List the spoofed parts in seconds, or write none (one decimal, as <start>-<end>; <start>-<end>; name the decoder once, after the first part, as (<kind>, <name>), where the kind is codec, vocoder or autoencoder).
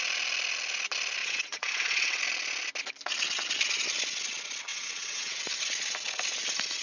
1.2-2.2 (vocoder, WaveNeXt); 4.7-5.4